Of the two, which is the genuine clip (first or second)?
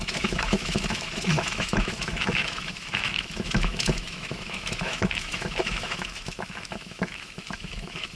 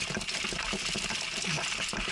second